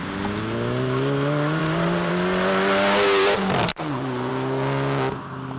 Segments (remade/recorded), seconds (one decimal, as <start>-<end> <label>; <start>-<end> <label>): 0.0-1.6 recorded; 1.6-2.1 remade; 2.1-3.7 recorded; 3.7-4.3 remade; 4.3-5.6 recorded